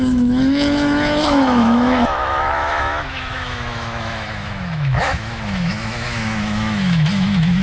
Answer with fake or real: fake